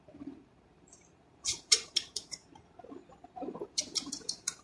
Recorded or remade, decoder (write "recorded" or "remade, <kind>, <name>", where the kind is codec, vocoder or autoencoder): remade, vocoder, BigVGAN v2